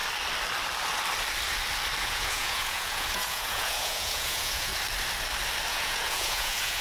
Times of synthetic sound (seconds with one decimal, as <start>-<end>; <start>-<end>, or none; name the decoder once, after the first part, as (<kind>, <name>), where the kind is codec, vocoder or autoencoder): 2.0-4.7 (vocoder, Vocos); 5.7-6.8